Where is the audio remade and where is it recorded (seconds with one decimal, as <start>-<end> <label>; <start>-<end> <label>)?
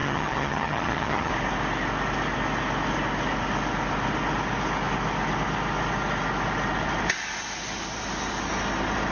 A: 0.0-1.3 remade; 1.3-9.1 recorded